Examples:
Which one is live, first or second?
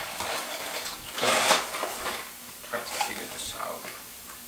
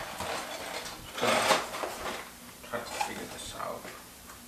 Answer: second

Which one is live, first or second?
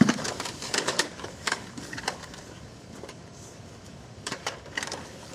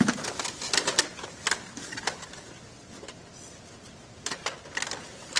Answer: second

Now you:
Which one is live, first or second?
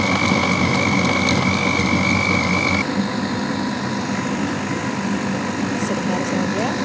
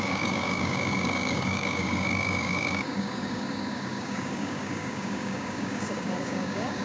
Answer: first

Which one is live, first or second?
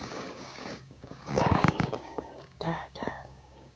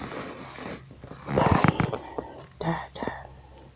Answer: second